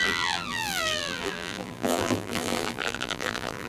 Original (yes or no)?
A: no